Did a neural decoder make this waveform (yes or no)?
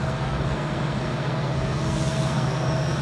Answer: yes